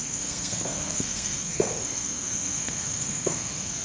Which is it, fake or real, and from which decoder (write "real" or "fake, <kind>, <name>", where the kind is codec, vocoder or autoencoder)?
fake, codec, SNAC